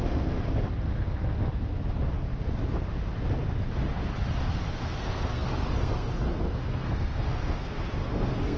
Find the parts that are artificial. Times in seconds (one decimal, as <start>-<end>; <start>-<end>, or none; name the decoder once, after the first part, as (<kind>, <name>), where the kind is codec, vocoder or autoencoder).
0.0-0.4 (codec, SNAC); 4.5-8.6